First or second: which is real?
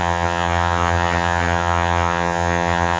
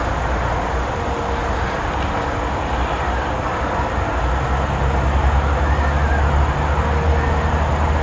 second